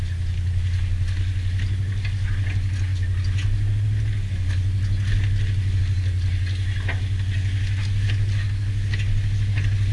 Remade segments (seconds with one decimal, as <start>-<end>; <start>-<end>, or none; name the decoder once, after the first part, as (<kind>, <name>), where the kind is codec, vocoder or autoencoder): none